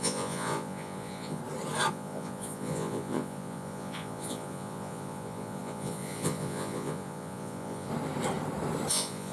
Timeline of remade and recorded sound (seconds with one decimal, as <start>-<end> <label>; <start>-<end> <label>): 0.0-1.4 remade; 1.4-1.9 recorded; 1.9-7.9 remade; 7.9-8.9 recorded; 8.9-9.3 remade